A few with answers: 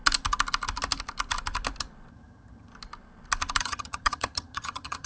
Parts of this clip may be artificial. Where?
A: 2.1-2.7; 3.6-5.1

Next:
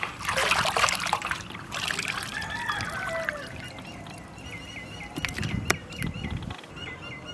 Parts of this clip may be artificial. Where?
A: none

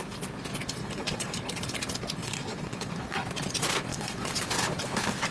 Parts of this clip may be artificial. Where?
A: 0.8-1.4; 2.2-3.2; 3.9-4.5

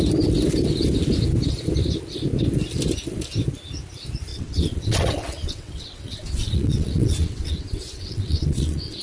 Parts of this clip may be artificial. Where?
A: 4.3-9.0

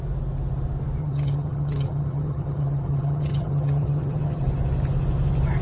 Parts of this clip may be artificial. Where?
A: 1.0-4.4

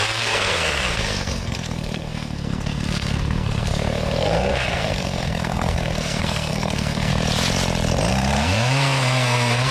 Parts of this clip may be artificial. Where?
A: 0.0-7.1; 8.1-9.7